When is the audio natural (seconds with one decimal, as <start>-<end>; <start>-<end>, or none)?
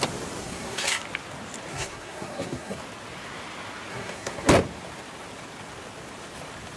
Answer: 0.0-0.4; 1.0-1.7; 2.8-3.9; 4.5-6.8